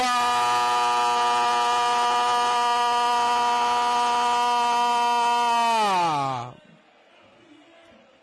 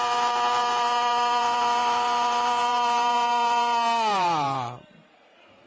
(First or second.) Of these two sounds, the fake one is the second